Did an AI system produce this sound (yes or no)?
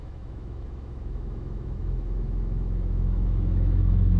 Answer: yes